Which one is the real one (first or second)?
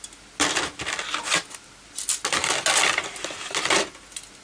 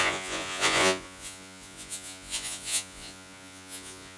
first